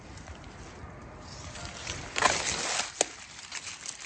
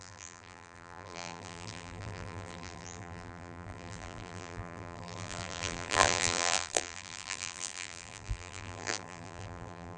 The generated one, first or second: second